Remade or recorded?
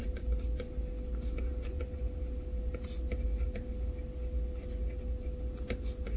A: recorded